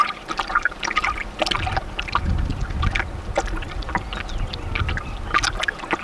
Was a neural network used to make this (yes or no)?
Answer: no